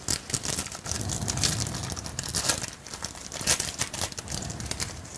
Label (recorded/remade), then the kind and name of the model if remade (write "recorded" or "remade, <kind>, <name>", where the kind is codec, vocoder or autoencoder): recorded